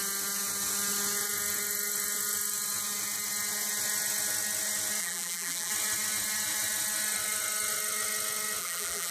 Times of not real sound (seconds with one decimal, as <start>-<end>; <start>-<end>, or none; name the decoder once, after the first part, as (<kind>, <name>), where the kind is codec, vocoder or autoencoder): 5.0-5.7 (vocoder, BigVGAN v2); 8.6-9.1